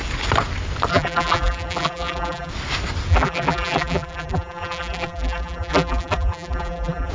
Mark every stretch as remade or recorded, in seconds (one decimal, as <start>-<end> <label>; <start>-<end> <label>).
0.0-0.9 recorded; 0.9-2.5 remade; 2.5-3.1 recorded; 3.1-7.1 remade